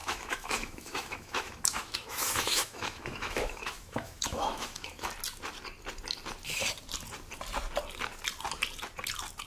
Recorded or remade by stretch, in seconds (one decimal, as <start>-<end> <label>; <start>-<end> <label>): 0.0-5.1 remade; 5.1-9.5 recorded